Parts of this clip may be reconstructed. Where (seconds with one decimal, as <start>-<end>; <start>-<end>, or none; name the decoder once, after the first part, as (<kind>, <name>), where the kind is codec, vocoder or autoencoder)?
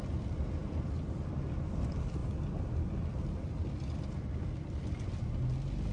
none